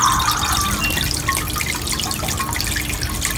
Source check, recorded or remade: recorded